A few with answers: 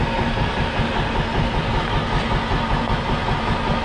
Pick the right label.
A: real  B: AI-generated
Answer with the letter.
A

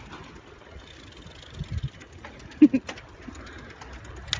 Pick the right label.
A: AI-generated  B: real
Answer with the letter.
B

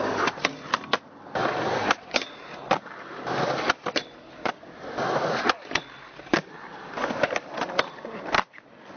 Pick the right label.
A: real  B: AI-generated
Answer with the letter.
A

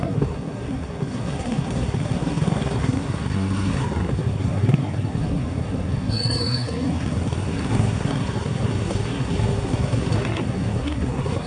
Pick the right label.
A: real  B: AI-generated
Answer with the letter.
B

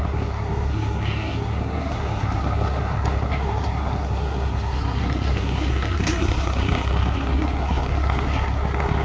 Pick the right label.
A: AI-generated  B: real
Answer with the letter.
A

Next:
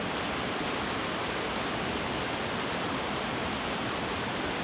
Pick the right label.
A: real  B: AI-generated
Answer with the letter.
A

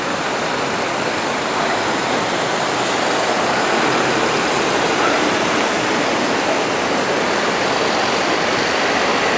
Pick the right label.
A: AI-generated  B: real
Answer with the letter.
B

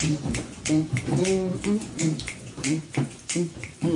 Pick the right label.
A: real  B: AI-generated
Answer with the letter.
B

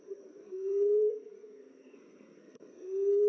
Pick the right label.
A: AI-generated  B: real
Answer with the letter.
A